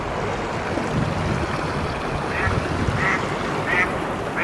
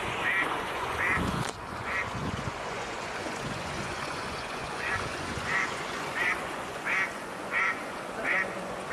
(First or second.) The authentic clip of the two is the first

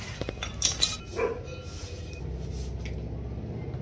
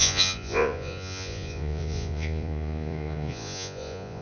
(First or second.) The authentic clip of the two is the first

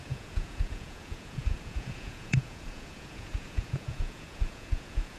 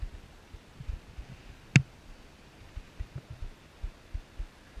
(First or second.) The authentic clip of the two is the second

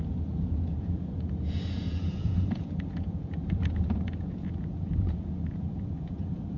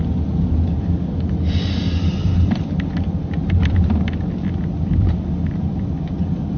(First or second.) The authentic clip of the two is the second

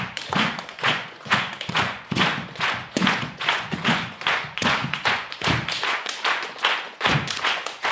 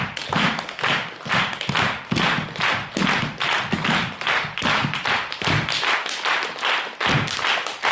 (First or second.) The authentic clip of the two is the second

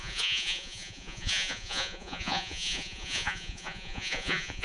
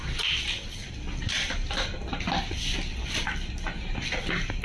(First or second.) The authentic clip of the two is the second